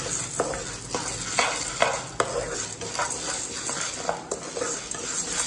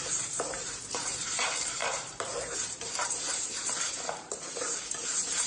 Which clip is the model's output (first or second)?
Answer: second